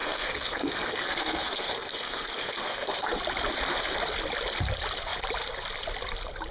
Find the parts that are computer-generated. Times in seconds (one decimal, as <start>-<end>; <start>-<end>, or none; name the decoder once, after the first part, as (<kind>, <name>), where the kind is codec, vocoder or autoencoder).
0.0-3.2 (codec, SNAC)